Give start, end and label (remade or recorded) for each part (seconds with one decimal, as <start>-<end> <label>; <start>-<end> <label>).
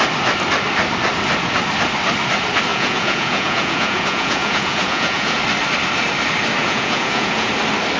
0.0-2.7 recorded; 2.7-5.4 remade; 5.4-6.6 recorded; 6.6-7.5 remade; 7.5-8.0 recorded